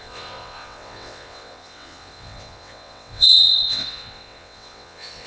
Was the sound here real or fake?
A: fake